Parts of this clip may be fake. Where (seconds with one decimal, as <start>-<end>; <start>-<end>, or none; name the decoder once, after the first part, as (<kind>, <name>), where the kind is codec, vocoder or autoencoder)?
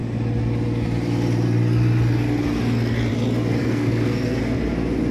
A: 3.6-4.4 (codec, SNAC)